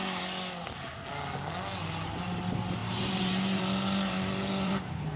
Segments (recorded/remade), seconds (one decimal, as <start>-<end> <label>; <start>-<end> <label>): 0.0-2.8 recorded; 2.8-3.6 remade; 3.6-4.4 recorded; 4.4-5.2 remade